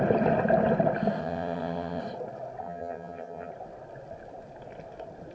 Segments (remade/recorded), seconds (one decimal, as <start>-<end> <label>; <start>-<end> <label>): 0.0-1.2 recorded; 1.2-2.0 remade; 2.0-2.6 recorded; 2.6-3.5 remade; 3.5-5.3 recorded